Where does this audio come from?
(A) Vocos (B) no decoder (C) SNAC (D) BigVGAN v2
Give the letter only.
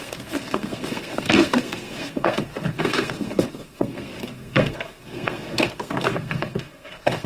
C